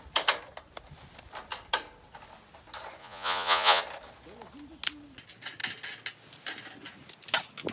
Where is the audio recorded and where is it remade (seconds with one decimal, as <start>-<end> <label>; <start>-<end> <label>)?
0.0-3.0 recorded; 3.0-3.8 remade; 3.8-7.7 recorded